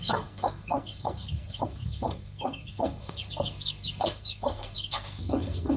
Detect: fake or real fake